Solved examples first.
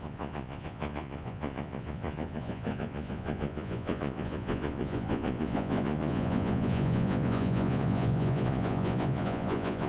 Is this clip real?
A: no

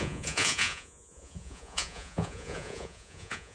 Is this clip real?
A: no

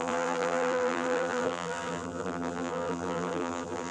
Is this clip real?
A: no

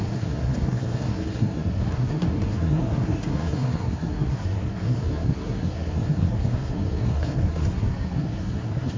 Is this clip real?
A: no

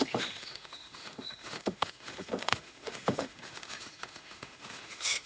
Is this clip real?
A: no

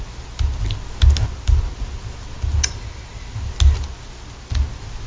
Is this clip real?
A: yes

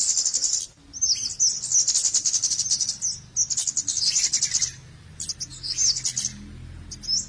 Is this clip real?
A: yes